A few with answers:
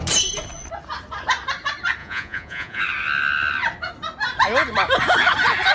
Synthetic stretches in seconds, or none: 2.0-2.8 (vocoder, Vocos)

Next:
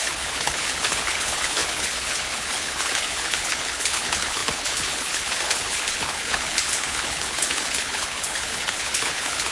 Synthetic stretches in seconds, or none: 0.0-9.5 (codec, HILCodec)